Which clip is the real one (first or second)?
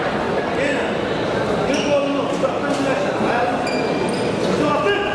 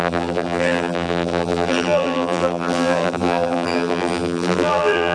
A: first